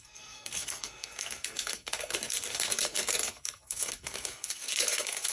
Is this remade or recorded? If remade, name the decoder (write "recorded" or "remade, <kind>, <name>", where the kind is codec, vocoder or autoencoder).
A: remade, codec, SNAC